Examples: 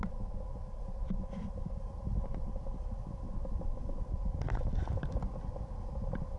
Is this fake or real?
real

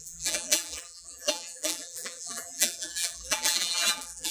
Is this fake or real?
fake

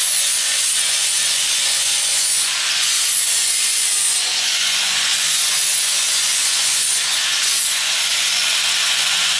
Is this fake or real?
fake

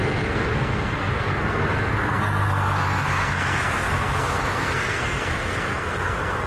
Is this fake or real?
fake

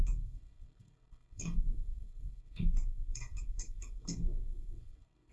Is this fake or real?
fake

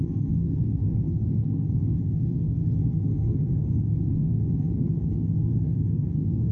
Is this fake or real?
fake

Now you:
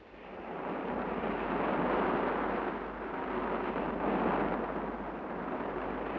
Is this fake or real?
real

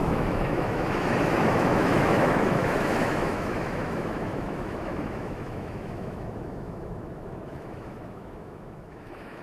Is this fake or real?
fake